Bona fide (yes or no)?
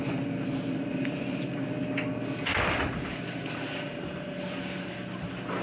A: yes